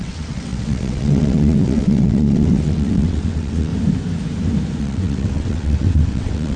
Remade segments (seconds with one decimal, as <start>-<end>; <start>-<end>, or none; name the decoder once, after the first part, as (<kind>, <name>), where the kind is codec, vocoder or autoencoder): 0.0-3.7 (vocoder, WaveNeXt); 4.8-6.6